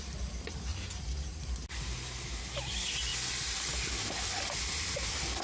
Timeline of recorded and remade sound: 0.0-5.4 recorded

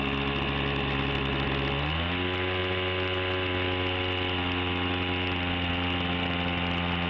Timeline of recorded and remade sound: 0.0-7.1 recorded

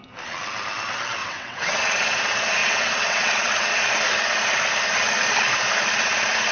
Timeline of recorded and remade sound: 0.0-1.2 recorded; 1.2-1.8 remade; 1.8-2.6 recorded; 2.6-3.7 remade; 3.7-6.5 recorded

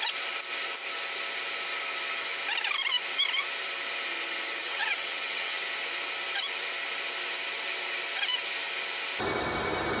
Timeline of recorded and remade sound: 0.0-4.6 recorded; 4.6-5.6 remade; 5.6-10.0 recorded

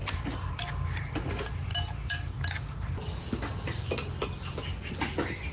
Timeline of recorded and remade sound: 0.0-5.5 recorded

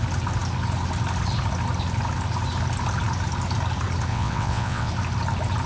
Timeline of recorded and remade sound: 0.0-4.1 recorded; 4.1-4.9 remade; 4.9-5.7 recorded

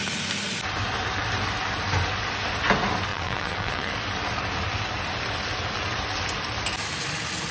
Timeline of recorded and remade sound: 0.0-3.1 recorded; 3.1-3.9 remade; 3.9-7.5 recorded

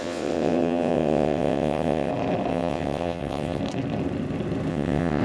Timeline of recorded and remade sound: 0.0-2.1 remade; 2.1-2.5 recorded; 2.5-3.6 remade; 3.6-4.7 recorded; 4.7-5.2 remade